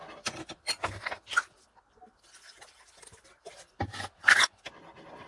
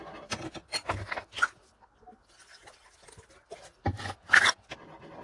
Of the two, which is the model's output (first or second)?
first